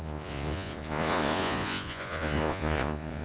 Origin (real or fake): fake